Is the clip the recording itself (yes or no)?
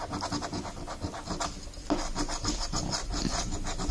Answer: yes